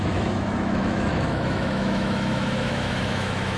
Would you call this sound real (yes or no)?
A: no